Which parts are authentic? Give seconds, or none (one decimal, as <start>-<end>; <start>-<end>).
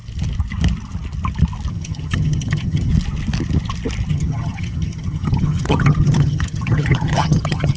0.0-1.7; 2.9-4.1